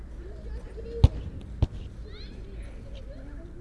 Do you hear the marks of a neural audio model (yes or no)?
no